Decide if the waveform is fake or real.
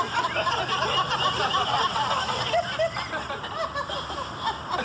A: real